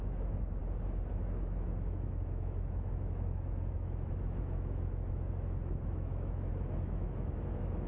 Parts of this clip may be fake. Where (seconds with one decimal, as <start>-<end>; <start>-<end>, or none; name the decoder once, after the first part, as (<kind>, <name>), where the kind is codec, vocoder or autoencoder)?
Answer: 0.0-0.6 (autoencoder, DAC-VAE); 1.1-7.9